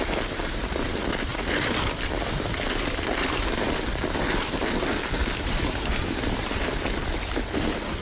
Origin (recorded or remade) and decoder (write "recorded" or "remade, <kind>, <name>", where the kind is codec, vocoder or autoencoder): remade, vocoder, BigVGAN v2